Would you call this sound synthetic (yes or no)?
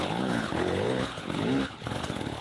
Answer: yes